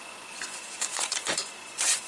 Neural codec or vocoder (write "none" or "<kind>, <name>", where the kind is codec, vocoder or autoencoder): vocoder, Vocos